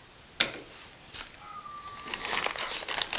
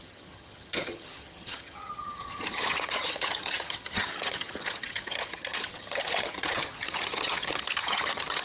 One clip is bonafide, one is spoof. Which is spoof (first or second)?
second